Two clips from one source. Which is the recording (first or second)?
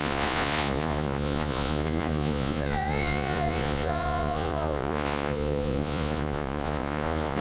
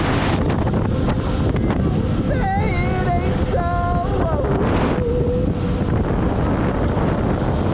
second